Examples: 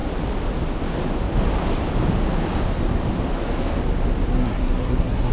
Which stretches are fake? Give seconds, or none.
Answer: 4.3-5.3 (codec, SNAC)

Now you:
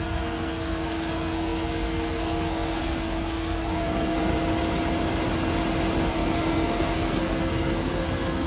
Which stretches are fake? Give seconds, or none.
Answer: 0.0-4.3 (codec, SNAC); 6.0-8.5